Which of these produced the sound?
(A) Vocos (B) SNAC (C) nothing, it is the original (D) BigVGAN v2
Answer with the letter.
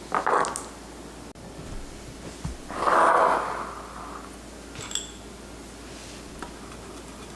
C